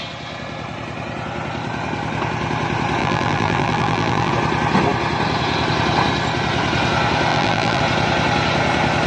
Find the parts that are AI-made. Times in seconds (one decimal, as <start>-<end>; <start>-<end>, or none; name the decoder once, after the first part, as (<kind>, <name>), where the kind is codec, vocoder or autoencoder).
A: 3.0-4.3 (vocoder, BigVGAN v2); 7.3-7.8